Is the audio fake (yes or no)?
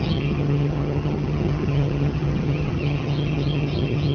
yes